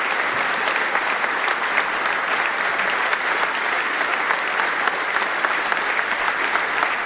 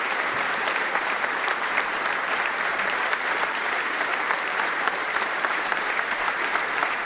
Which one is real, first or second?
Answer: first